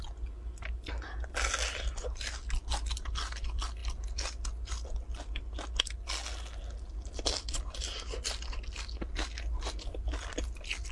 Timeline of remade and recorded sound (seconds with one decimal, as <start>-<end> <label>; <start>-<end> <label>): 0.0-10.9 recorded